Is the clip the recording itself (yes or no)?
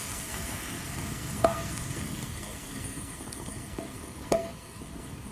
no